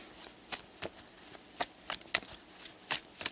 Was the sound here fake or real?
real